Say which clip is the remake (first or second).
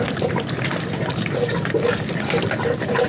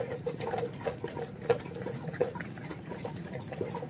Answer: second